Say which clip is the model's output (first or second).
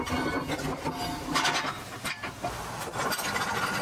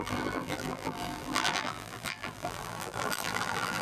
second